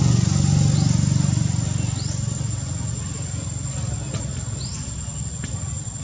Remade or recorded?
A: recorded